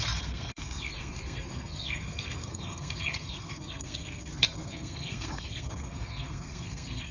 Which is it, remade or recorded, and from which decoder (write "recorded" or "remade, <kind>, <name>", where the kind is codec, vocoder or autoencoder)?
remade, codec, SNAC